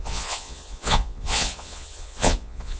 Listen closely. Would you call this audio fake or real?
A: fake